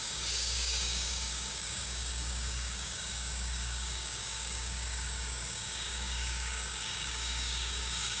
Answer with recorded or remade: remade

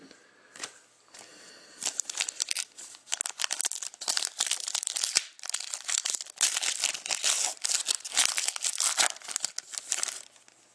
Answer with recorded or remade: recorded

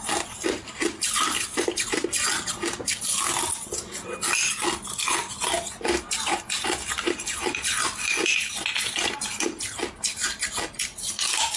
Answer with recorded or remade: recorded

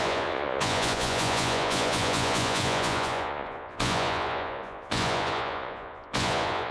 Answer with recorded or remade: remade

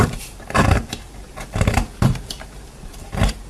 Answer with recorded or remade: remade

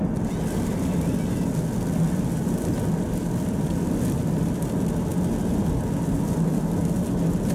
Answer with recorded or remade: recorded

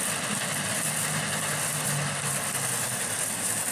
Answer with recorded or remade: recorded